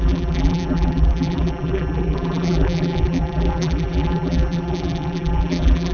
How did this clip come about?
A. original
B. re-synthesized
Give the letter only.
B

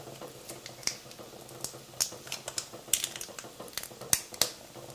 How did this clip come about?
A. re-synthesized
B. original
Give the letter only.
B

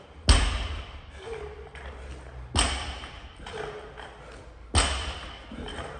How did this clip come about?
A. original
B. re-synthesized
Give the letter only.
A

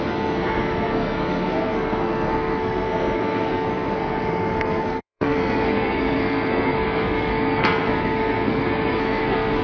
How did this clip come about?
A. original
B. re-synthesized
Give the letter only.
B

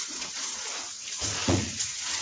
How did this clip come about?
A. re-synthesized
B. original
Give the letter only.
A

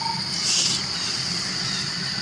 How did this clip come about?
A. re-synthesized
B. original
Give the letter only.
B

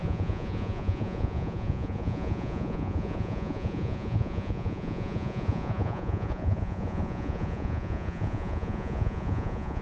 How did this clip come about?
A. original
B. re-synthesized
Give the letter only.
B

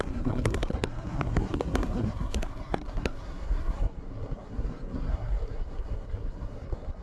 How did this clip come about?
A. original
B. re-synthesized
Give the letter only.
B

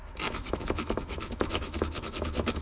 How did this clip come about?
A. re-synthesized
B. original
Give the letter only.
A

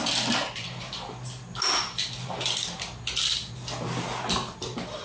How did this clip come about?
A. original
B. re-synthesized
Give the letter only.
A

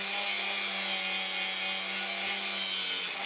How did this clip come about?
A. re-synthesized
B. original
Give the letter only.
B